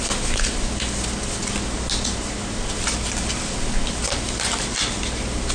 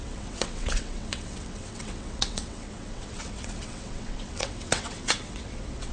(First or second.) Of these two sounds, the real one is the first